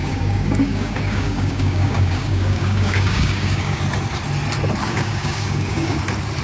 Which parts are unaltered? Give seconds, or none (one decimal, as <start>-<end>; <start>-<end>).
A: 3.8-4.8; 6.0-6.4